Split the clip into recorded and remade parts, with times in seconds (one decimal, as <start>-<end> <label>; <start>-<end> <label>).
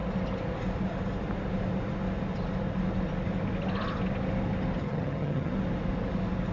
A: 0.0-4.8 recorded; 4.8-5.5 remade; 5.5-6.5 recorded